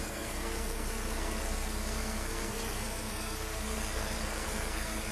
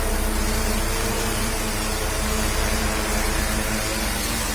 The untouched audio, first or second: second